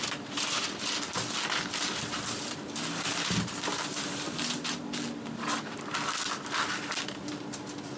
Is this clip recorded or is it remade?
recorded